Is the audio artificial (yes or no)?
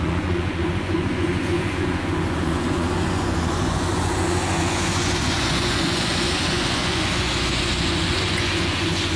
yes